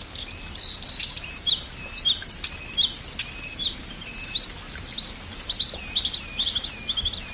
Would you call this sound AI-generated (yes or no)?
no